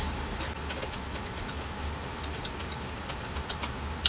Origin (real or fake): real